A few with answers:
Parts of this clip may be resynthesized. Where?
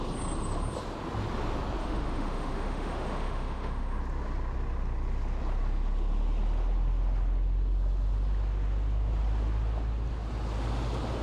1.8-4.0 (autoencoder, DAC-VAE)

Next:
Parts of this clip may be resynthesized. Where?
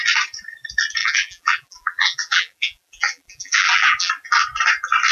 1.0-4.1 (vocoder, BigVGAN v2)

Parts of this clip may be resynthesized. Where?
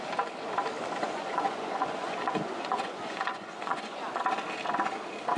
1.0-4.2 (vocoder, Vocos)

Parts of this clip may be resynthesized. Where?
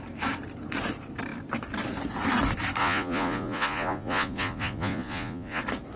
2.8-5.6 (vocoder, Vocos)